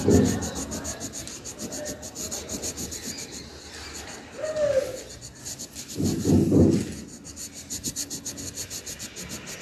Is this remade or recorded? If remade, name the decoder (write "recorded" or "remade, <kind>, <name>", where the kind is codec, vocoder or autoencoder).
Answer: recorded